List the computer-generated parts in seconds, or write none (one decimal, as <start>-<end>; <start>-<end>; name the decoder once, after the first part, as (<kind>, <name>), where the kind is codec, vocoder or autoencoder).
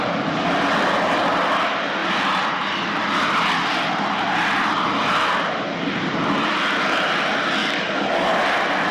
7.6-8.4 (codec, DAC)